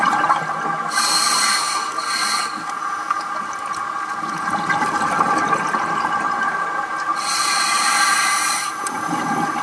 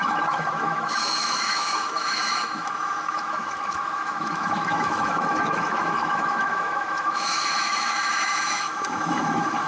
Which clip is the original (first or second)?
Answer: first